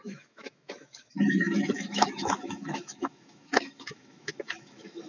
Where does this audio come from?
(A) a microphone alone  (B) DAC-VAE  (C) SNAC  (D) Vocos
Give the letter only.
B